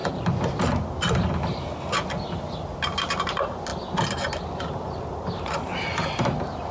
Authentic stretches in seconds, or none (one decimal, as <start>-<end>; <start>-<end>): 0.0-5.1; 5.9-6.7